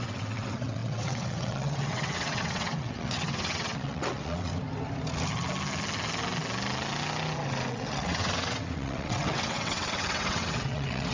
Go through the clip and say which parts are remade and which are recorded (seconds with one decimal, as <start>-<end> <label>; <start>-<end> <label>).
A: 0.0-4.5 remade; 4.5-7.7 recorded; 7.7-11.1 remade